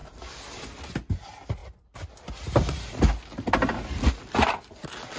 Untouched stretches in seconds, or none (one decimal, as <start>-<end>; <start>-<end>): 0.0-5.2